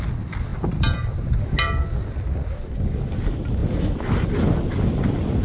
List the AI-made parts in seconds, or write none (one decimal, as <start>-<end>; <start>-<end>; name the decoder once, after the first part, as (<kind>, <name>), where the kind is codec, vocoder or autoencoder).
none